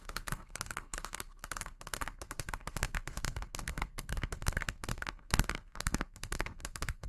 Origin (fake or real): fake